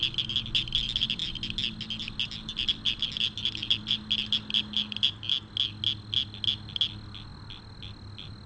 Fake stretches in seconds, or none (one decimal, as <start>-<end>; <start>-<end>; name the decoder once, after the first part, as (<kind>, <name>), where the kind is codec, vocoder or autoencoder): none